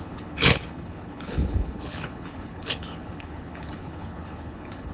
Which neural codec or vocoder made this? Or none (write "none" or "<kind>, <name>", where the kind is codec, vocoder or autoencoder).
codec, HILCodec